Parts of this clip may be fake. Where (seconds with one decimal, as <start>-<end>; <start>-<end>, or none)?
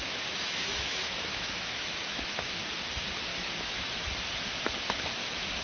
0.0-2.6; 3.3-4.1